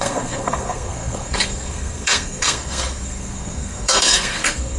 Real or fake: fake